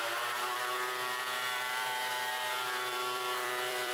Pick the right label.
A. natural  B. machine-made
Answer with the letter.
B